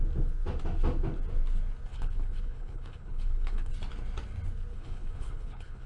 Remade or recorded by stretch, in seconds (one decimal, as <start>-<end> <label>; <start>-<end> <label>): 0.0-1.9 recorded; 1.9-3.7 remade; 3.7-4.7 recorded; 4.7-5.9 remade